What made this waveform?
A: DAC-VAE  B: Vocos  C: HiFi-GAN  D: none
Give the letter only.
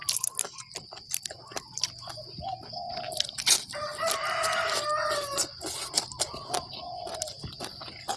D